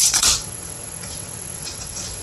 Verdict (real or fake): fake